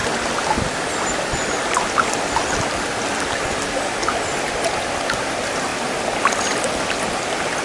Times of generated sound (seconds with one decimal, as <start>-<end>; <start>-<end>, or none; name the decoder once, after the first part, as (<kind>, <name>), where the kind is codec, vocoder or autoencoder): none